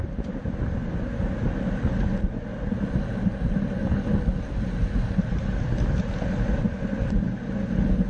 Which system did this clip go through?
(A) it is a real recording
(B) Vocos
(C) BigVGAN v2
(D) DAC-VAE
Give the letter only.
A